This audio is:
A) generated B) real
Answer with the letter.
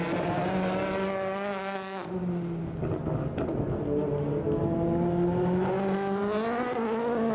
B